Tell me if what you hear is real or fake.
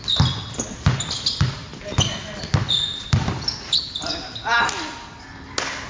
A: real